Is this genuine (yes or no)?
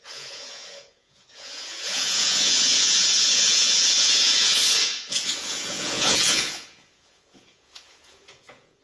no